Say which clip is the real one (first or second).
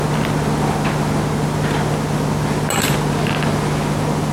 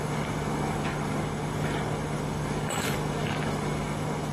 first